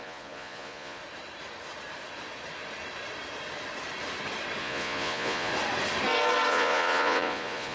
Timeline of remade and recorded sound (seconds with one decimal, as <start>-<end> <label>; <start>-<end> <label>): 0.0-1.0 remade; 1.0-4.6 recorded; 4.6-5.5 remade; 5.5-6.5 recorded; 6.5-7.7 remade